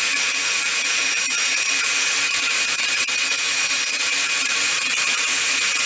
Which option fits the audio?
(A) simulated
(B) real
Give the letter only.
A